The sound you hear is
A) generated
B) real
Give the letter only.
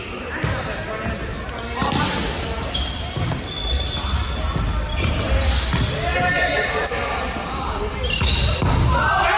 B